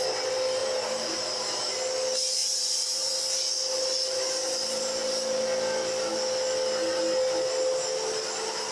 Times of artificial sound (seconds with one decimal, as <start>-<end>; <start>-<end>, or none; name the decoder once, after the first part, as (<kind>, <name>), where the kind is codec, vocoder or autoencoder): 0.6-1.7 (vocoder, BigVGAN v2); 2.4-3.1